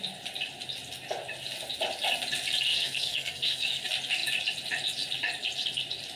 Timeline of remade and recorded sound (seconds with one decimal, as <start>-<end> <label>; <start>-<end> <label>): 0.0-2.7 recorded; 2.7-3.8 remade; 3.8-6.2 recorded